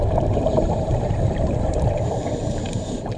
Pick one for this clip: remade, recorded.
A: remade